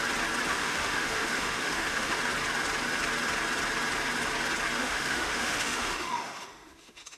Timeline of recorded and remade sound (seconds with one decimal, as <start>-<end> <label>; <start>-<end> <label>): 0.0-0.5 recorded; 0.5-2.2 remade; 2.2-4.8 recorded; 4.8-7.2 remade